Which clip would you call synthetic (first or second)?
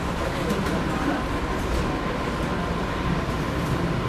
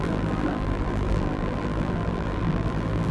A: second